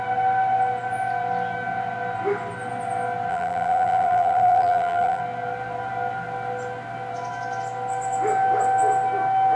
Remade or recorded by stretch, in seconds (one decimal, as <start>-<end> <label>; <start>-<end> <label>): 0.0-3.3 recorded; 3.3-5.2 remade; 5.2-9.6 recorded